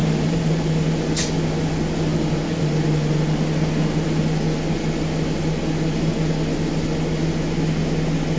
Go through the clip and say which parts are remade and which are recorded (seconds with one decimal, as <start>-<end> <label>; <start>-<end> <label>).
0.0-0.6 remade; 0.6-8.4 recorded